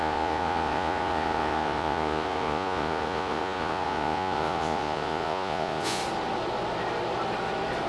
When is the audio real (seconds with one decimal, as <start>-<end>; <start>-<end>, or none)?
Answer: 6.0-7.9